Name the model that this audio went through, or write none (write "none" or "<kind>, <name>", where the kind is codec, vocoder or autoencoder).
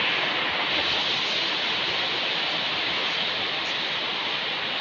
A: none